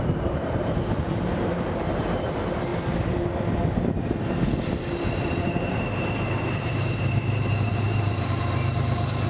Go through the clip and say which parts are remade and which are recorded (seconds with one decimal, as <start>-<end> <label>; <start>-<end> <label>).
0.0-2.7 remade; 2.7-5.6 recorded; 5.6-9.3 remade